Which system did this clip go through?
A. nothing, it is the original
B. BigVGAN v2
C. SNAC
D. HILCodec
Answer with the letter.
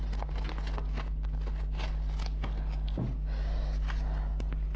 A